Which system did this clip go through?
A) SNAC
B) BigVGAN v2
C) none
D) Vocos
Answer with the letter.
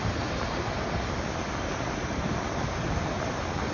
C